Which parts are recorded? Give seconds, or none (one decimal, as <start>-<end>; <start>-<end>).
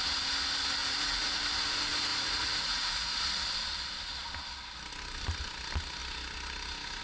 0.0-0.8; 1.4-2.1; 3.2-7.0